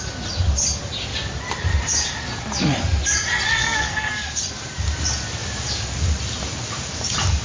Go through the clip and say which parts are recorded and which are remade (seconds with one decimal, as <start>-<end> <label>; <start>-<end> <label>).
0.0-3.6 recorded; 3.6-4.1 remade; 4.1-7.4 recorded